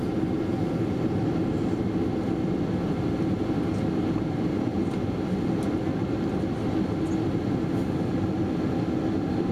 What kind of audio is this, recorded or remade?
recorded